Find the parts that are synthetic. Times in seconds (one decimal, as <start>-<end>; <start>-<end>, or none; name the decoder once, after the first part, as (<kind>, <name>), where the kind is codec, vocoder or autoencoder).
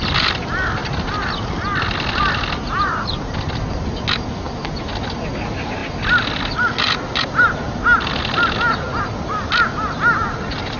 none